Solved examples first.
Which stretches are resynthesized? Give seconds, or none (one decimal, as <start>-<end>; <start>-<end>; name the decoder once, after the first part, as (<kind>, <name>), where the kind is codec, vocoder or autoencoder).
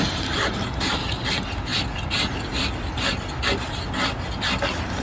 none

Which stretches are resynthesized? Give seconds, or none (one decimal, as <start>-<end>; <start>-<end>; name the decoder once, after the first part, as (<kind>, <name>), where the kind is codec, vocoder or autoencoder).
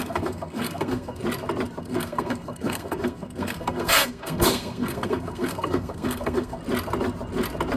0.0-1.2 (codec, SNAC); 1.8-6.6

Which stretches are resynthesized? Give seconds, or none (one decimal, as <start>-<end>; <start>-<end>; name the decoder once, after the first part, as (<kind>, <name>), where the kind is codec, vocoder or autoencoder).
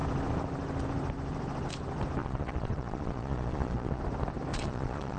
2.2-4.0 (vocoder, Vocos); 4.5-5.2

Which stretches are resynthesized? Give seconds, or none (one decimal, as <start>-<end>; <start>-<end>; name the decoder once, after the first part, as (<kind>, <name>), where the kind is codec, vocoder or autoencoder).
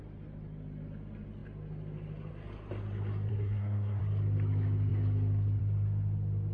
3.3-4.0 (codec, SNAC)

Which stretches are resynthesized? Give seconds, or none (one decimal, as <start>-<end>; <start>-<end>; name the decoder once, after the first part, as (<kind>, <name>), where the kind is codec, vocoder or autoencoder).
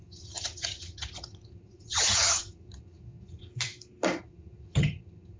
0.0-3.5 (vocoder, HiFi-GAN); 4.2-5.4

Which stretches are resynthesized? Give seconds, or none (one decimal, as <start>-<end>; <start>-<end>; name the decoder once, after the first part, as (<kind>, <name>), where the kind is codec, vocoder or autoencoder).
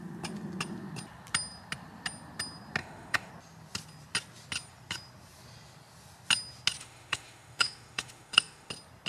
2.8-3.3 (autoencoder, DAC-VAE); 6.8-8.7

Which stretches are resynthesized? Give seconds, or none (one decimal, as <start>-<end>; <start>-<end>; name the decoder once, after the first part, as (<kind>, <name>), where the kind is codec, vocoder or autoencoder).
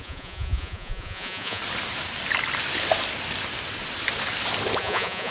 0.0-1.6 (vocoder, Vocos); 4.8-5.3